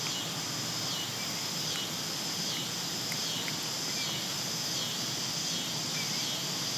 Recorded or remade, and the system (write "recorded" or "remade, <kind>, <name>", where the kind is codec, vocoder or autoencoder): recorded